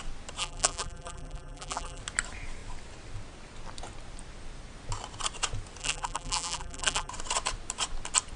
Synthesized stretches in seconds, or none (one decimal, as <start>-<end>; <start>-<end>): 0.4-2.0; 5.8-7.1